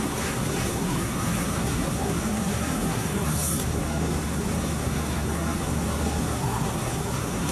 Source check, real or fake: fake